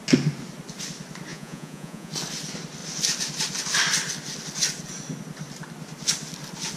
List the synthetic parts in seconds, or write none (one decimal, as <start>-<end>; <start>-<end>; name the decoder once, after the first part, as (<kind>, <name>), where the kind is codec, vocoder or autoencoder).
1.3-2.1 (vocoder, Vocos)